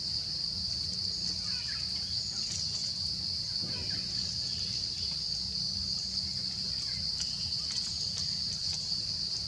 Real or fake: real